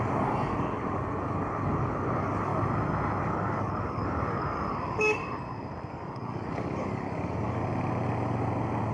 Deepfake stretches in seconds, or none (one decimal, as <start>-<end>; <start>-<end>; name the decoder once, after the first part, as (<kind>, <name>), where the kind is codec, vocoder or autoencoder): 0.0-2.5 (codec, DAC); 3.2-5.2; 5.9-7.6